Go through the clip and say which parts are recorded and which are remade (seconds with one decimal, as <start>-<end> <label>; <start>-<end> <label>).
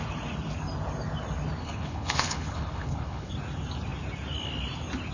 0.0-1.6 recorded; 1.6-3.3 remade; 3.3-5.1 recorded